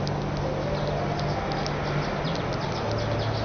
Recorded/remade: recorded